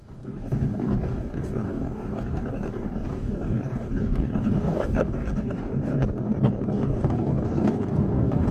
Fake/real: fake